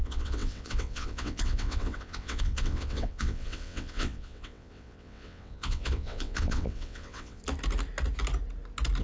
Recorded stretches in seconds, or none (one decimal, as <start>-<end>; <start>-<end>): 7.4-9.0